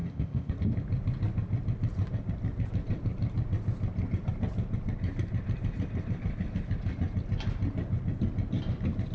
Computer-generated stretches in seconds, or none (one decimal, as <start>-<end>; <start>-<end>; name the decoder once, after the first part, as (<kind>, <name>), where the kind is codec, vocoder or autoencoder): 0.0-0.5 (codec, ZipCodec)